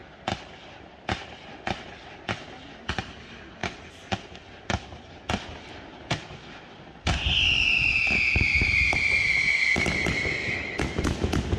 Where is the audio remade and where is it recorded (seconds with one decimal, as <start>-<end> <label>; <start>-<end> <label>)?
0.0-11.6 recorded